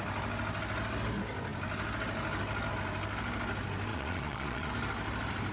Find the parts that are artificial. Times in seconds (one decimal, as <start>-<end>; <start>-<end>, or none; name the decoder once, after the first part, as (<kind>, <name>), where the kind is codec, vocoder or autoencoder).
3.9-4.7 (vocoder, Vocos)